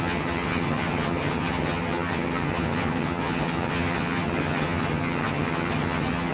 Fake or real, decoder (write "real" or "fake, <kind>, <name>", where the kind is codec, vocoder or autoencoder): fake, vocoder, HiFi-GAN